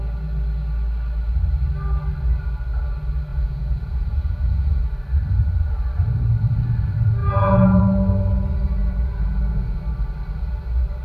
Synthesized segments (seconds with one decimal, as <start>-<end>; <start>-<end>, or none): 3.3-4.8; 7.2-7.8; 8.8-9.8